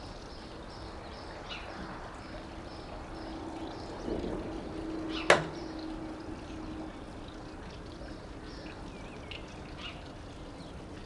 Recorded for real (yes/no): yes